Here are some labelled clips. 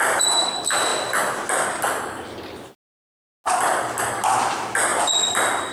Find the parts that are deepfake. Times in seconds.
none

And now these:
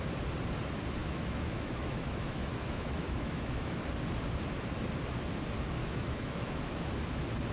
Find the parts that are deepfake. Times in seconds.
1.0-3.8 (autoencoder, DAC-VAE); 5.8-6.8

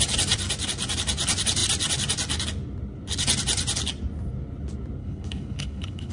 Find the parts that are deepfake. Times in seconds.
5.0-6.1 (codec, HILCodec)

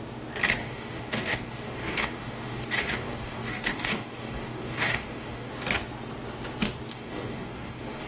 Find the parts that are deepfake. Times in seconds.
0.6-5.5 (codec, DAC); 6.9-8.1

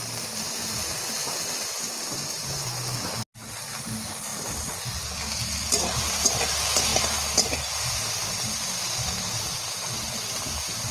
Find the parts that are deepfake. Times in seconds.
none